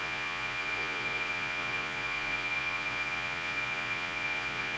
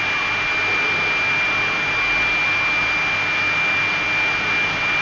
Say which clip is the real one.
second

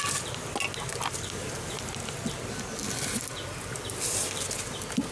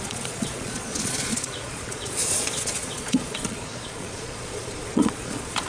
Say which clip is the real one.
first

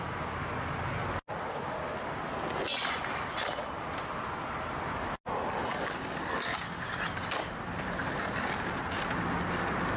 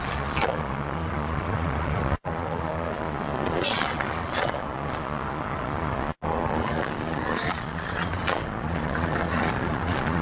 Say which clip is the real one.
first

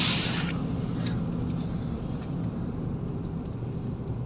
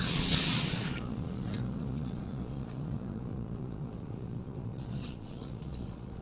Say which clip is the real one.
first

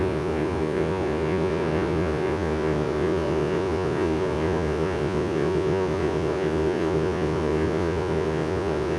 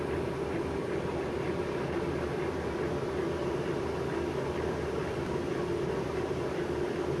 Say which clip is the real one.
second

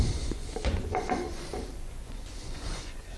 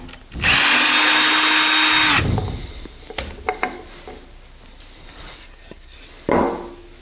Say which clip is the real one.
second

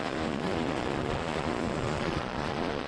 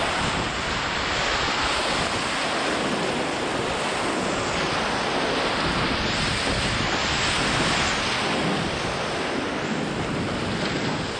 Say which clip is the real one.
second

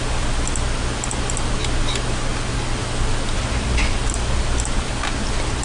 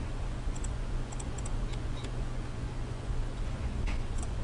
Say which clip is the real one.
first